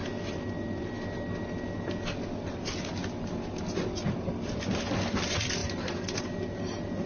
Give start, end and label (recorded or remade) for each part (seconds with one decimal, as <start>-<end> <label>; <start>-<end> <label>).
0.0-7.1 recorded

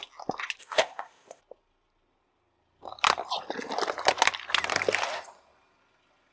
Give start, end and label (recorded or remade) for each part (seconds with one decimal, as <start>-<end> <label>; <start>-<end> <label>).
0.0-0.6 recorded; 0.6-1.4 remade; 1.4-6.3 recorded

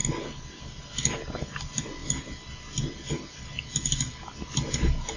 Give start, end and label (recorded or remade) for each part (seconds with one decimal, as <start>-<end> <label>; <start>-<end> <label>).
0.0-5.2 recorded

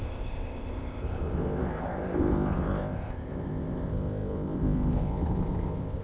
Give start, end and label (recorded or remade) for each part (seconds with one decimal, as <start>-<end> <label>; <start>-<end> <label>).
0.0-6.0 remade

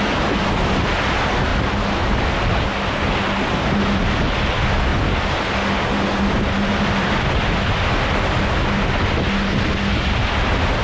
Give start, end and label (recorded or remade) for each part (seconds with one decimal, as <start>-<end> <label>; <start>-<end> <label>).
0.0-10.8 recorded

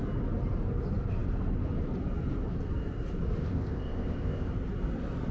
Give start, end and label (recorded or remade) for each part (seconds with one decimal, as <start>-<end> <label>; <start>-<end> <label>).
0.0-3.4 recorded; 3.4-4.5 remade; 4.5-5.3 recorded